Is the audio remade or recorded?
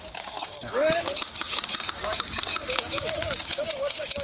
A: remade